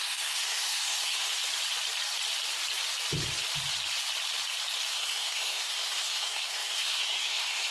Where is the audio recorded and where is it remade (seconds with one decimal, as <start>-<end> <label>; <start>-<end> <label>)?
0.0-1.4 remade; 1.4-4.9 recorded; 4.9-7.7 remade